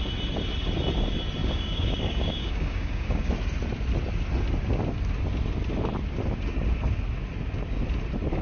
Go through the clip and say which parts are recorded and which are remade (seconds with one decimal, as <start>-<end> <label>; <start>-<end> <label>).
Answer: 0.0-1.4 recorded; 1.4-3.3 remade; 3.3-8.4 recorded